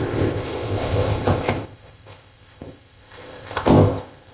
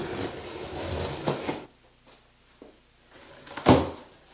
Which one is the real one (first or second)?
second